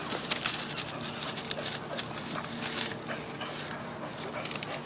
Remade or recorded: recorded